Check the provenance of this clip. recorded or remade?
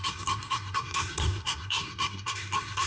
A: remade